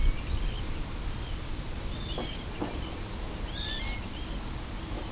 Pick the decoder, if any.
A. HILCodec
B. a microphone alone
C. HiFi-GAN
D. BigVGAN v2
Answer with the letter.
B